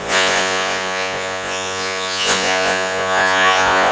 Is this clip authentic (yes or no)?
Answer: no